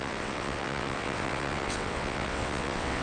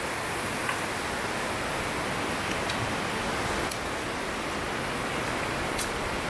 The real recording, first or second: second